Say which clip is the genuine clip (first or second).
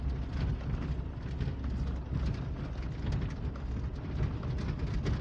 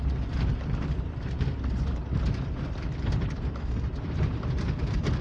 first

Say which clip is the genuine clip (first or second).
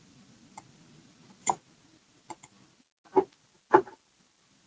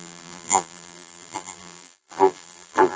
first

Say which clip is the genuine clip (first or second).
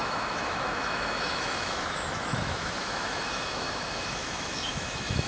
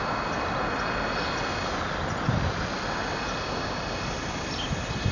second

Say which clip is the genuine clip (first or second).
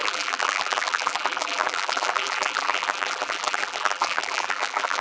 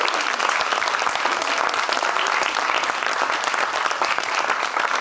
second